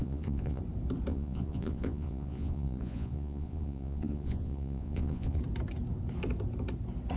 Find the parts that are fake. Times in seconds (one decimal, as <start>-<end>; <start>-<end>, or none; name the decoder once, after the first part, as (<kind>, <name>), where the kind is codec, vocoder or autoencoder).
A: 0.0-0.6 (vocoder, Vocos); 1.1-5.4